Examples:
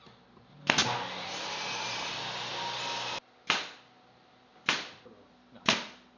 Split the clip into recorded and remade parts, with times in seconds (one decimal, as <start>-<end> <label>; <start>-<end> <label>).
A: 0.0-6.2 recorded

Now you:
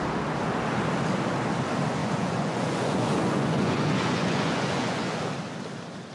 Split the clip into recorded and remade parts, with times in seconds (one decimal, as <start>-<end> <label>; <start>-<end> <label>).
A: 0.0-2.0 recorded; 2.0-5.2 remade; 5.2-6.1 recorded

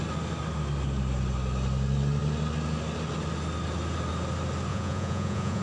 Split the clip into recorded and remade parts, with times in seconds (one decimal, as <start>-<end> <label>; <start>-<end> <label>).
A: 0.0-4.7 recorded; 4.7-5.6 remade

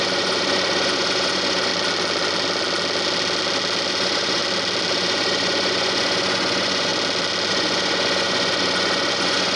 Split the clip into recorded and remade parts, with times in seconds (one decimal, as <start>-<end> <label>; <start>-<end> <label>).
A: 0.0-1.7 remade; 1.7-3.9 recorded; 3.9-4.4 remade; 4.4-4.9 recorded; 4.9-6.9 remade; 6.9-7.5 recorded; 7.5-9.6 remade

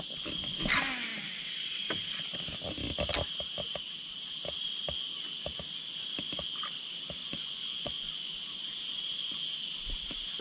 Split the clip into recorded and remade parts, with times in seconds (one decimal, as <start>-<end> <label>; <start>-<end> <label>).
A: 0.0-7.2 recorded; 7.2-8.3 remade; 8.3-10.4 recorded